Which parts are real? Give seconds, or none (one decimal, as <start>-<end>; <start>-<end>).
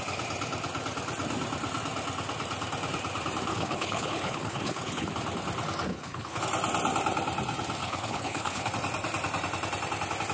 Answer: 0.0-3.5; 5.1-5.9; 6.4-7.8; 8.7-10.3